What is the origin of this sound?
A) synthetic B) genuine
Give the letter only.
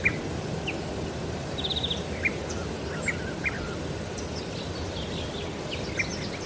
B